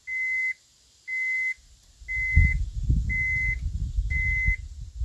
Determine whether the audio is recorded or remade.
recorded